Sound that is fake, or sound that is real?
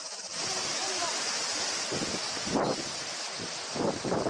real